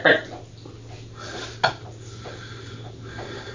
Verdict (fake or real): real